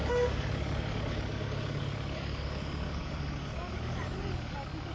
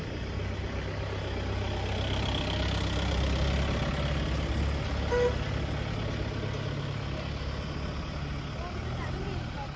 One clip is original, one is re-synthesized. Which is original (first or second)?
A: second